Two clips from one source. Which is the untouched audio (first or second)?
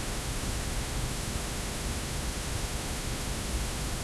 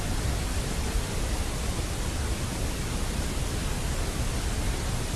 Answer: second